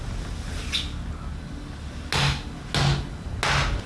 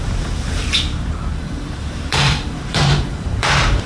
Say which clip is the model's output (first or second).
second